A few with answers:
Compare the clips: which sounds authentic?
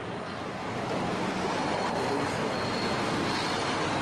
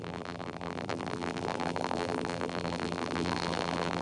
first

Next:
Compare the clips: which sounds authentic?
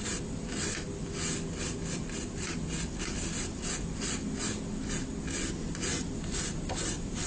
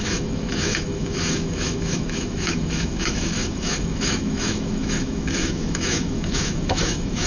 first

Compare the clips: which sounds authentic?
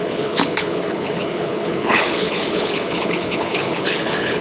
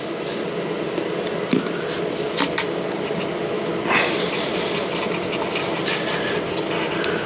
second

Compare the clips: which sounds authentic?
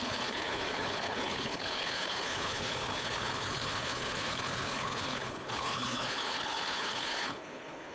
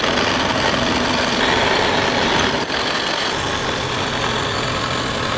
second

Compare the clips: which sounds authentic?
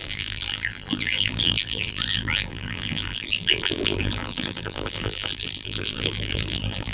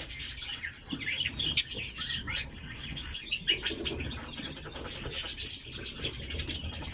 second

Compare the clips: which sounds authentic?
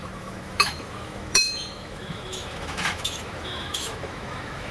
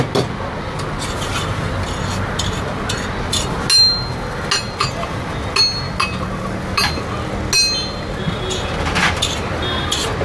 second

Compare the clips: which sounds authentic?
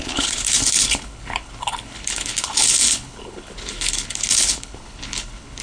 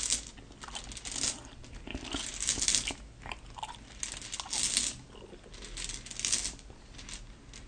second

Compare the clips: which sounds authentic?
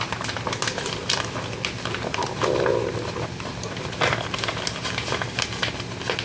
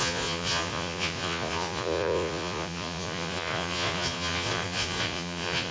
first